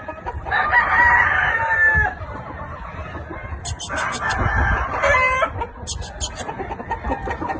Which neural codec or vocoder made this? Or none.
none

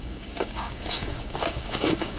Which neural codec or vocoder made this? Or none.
codec, DAC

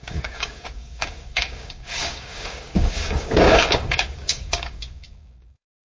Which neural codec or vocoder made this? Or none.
codec, DAC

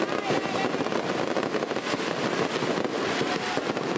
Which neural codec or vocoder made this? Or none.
none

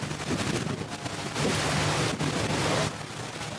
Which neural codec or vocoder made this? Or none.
none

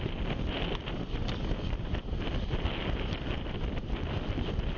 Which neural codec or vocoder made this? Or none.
none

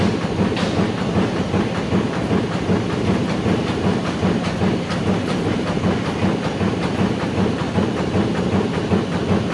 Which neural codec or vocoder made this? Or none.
none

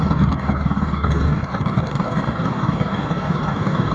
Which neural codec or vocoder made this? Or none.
codec, DAC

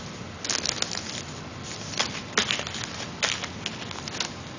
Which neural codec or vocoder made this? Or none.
none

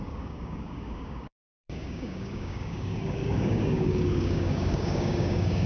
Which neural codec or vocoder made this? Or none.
codec, DAC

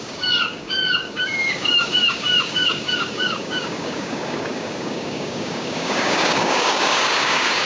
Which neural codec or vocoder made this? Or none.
codec, DAC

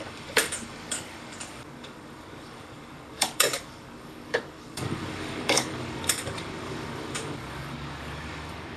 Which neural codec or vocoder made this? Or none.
codec, DAC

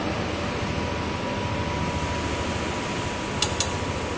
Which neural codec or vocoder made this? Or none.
none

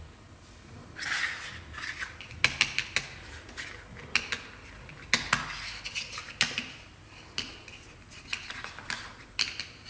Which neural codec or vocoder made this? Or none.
none